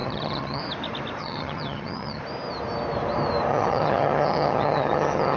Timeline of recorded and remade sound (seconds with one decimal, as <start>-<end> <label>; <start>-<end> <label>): 0.0-0.6 remade; 0.6-1.2 recorded; 1.2-2.2 remade; 2.2-3.5 recorded; 3.5-5.4 remade